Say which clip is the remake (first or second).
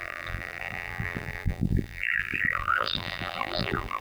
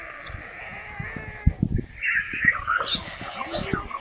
first